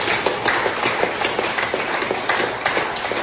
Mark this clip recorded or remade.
recorded